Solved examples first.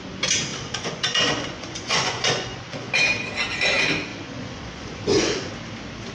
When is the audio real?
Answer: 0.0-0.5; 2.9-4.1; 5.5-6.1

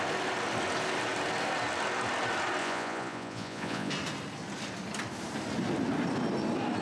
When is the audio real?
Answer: 0.0-2.6; 3.9-6.8

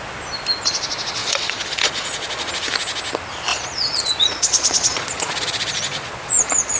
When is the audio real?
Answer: 0.0-1.2; 2.5-3.5